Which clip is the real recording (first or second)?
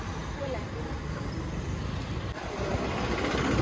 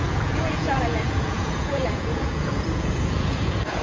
first